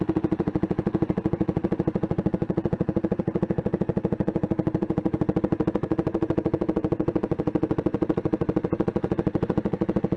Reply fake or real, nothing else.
fake